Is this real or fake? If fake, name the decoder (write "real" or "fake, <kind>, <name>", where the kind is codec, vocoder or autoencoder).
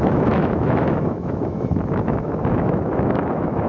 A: fake, autoencoder, DAC-VAE